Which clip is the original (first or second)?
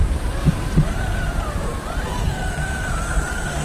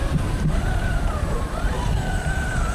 first